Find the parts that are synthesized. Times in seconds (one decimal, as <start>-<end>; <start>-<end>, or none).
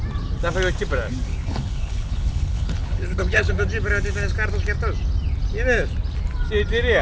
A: 1.3-3.5